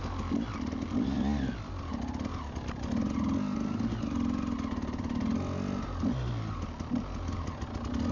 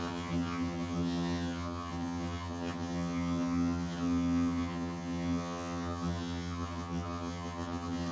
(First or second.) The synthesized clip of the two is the second